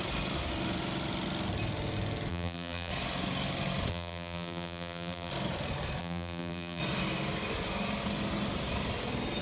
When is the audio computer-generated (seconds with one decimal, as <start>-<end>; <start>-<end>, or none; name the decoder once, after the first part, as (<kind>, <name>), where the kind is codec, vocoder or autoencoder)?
2.3-2.9 (vocoder, BigVGAN v2); 3.9-5.3; 6.0-6.8